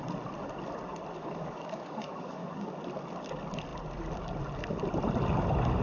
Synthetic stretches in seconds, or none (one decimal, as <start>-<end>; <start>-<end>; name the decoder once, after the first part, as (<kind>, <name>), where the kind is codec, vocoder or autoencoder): 1.2-2.8 (codec, DAC)